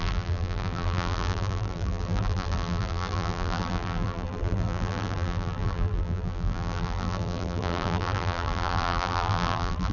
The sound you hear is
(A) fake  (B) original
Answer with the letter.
A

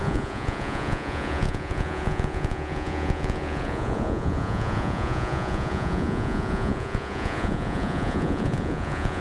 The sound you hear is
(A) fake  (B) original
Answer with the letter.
A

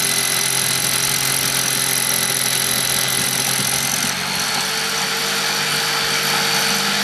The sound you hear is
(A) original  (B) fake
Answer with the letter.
A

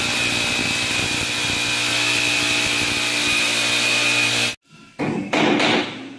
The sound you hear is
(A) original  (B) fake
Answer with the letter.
A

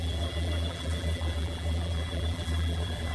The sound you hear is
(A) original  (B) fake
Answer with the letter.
B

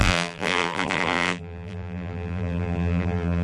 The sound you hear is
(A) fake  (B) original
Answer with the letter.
A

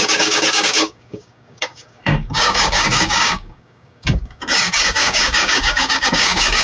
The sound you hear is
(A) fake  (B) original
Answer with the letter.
A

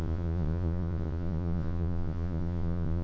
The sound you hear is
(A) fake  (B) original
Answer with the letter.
A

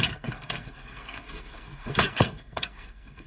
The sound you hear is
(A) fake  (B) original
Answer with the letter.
A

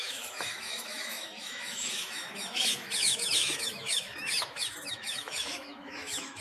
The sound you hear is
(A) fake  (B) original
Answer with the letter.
A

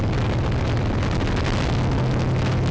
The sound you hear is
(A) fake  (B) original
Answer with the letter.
B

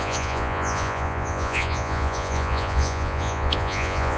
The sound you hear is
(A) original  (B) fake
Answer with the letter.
B